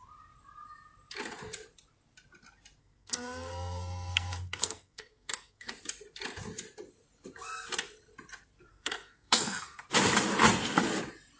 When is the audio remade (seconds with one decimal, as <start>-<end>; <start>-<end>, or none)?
2.8-5.7; 8.7-9.8